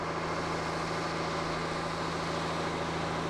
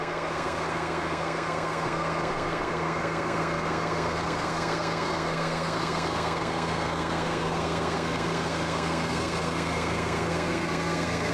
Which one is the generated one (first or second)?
second